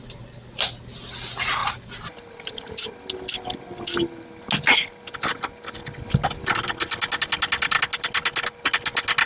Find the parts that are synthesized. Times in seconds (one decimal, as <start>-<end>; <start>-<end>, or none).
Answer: 1.6-2.9